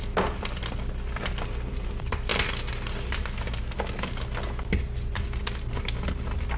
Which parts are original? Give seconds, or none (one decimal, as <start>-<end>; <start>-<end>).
2.3-6.6